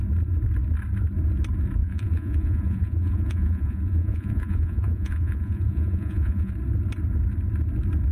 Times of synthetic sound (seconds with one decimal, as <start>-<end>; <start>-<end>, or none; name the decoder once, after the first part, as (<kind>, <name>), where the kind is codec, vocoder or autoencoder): 1.8-6.5 (vocoder, Vocos)